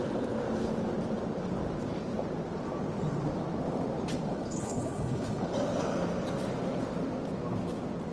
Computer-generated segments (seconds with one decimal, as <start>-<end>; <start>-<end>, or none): 4.3-5.5